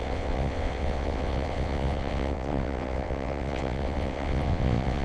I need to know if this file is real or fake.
fake